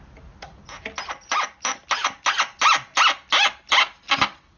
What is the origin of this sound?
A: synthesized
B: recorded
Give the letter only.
B